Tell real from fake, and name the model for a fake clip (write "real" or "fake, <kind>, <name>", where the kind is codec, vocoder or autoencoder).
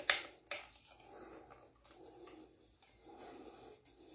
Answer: real